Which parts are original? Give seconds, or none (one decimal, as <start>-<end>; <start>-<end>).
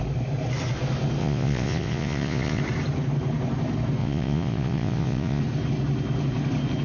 0.0-1.2; 2.6-4.0; 5.4-6.8